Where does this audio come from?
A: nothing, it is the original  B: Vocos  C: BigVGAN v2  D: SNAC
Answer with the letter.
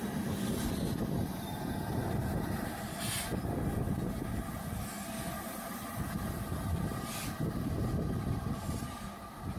A